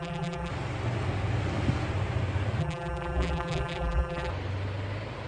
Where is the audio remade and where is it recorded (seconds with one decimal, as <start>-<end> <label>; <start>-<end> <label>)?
0.0-0.5 remade; 0.5-2.6 recorded; 2.6-4.3 remade; 4.3-5.3 recorded

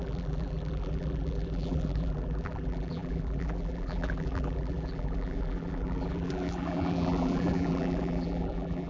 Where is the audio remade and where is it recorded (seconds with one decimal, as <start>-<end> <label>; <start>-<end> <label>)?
0.0-8.9 remade

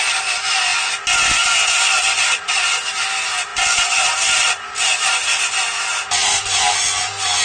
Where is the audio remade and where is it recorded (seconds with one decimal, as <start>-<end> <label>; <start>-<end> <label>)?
0.0-7.4 recorded

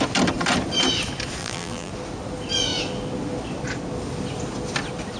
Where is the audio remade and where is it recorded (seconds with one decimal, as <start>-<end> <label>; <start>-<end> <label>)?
0.0-1.4 recorded; 1.4-1.9 remade; 1.9-5.2 recorded

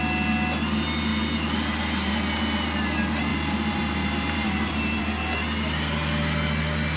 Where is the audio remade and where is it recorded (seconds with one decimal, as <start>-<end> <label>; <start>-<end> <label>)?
0.0-3.3 recorded; 3.3-5.0 remade; 5.0-7.0 recorded

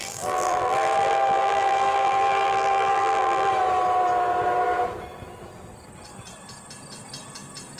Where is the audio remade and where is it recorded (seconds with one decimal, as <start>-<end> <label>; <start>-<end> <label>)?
0.0-3.5 remade; 3.5-7.8 recorded